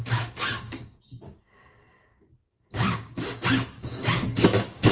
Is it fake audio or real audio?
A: fake